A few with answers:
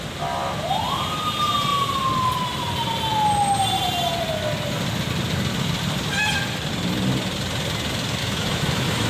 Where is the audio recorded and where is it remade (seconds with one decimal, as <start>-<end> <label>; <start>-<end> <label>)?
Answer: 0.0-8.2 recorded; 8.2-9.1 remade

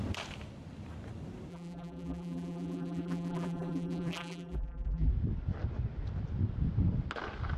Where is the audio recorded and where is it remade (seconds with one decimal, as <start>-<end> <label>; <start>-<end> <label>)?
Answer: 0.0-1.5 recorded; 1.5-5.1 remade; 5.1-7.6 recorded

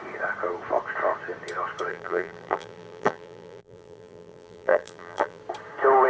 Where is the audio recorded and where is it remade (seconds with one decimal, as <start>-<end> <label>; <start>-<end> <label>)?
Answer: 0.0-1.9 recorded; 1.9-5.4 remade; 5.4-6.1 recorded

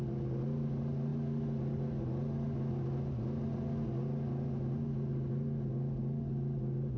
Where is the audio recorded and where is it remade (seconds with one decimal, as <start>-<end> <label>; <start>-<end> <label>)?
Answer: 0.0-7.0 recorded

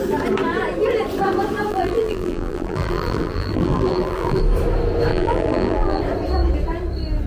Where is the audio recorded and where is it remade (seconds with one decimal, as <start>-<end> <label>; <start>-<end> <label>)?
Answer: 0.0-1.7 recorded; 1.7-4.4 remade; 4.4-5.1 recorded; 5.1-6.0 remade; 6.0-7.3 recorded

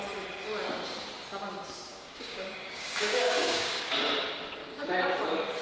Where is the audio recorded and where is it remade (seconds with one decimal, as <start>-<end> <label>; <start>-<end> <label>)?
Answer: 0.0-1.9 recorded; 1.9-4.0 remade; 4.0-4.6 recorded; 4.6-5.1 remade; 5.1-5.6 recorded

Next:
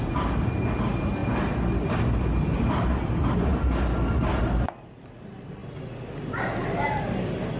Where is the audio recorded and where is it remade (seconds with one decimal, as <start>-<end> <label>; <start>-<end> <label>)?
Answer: 0.0-7.6 recorded